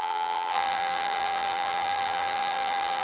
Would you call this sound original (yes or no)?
no